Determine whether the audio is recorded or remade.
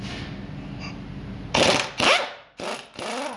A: recorded